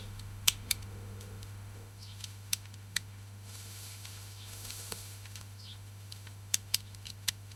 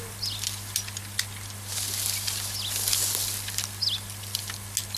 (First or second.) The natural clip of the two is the second